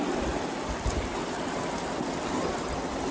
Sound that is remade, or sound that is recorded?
recorded